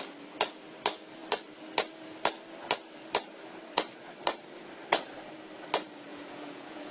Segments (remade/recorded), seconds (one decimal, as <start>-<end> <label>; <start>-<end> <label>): 0.0-6.1 recorded; 6.1-6.9 remade